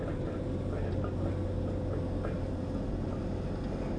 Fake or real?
real